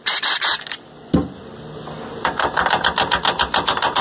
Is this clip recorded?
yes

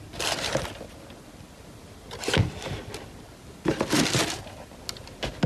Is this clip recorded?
yes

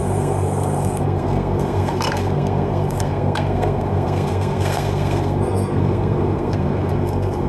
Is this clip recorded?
no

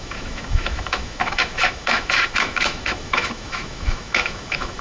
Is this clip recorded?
no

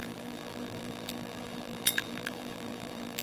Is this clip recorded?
no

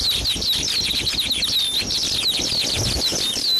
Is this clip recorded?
yes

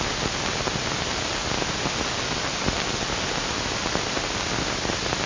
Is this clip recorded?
yes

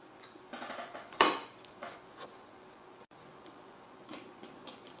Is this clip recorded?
no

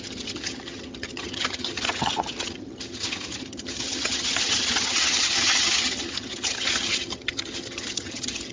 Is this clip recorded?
no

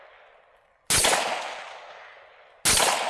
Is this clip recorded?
yes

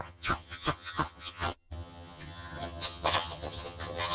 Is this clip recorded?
no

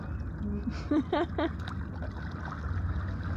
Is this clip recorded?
yes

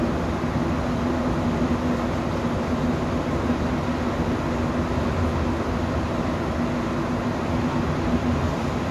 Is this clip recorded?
yes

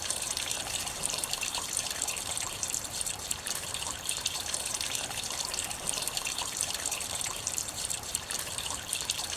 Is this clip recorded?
no